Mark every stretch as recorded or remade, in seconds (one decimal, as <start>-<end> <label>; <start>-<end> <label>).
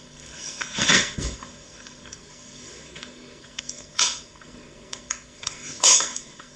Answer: 0.0-6.6 remade